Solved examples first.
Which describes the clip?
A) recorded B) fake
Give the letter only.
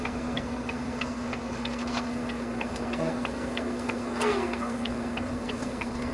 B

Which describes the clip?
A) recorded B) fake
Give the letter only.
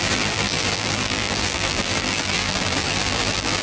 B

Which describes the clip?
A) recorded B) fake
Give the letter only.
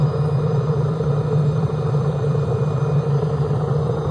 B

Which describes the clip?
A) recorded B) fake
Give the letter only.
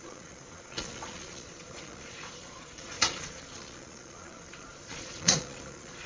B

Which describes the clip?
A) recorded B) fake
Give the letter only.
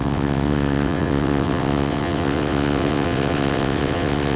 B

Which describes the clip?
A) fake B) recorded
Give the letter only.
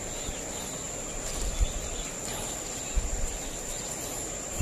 B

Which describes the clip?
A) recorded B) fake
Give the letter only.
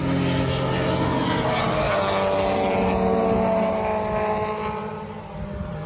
A